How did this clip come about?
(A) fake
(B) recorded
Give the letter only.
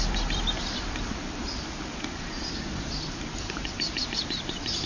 A